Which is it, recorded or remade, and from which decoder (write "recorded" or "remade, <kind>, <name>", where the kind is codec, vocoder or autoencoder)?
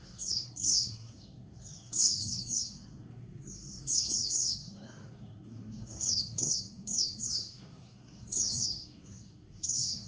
remade, codec, SNAC